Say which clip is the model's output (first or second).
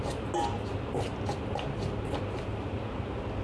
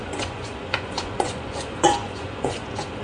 second